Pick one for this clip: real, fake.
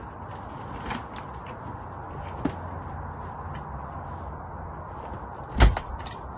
real